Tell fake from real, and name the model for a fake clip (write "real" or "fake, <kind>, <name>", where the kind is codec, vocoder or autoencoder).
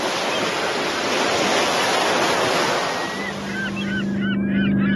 real